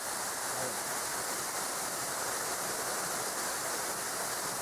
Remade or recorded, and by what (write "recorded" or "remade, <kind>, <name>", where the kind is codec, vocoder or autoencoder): recorded